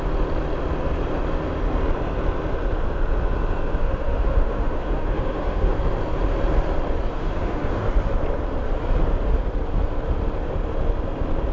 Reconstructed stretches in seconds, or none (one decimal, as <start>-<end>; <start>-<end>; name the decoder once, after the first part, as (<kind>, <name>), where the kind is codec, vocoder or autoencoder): 3.8-5.7 (autoencoder, DAC-VAE); 7.1-7.8